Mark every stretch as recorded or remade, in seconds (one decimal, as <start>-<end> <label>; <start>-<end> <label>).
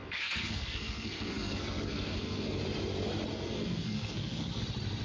0.0-2.6 remade; 2.6-3.3 recorded; 3.3-4.6 remade; 4.6-5.0 recorded